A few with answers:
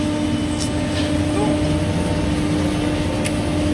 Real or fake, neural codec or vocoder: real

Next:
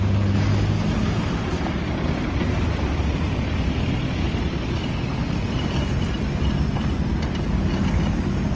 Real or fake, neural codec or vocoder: real